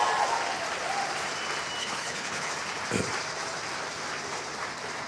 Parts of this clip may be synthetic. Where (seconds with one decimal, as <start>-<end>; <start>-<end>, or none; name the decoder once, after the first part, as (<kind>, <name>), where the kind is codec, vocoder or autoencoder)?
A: 1.8-2.5 (codec, HILCodec)